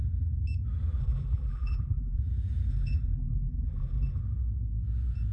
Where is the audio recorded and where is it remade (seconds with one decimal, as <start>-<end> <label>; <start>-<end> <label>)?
0.0-1.0 recorded; 1.0-2.2 remade; 2.2-2.7 recorded; 2.7-4.2 remade; 4.2-5.3 recorded